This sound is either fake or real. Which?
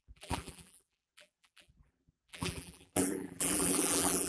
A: fake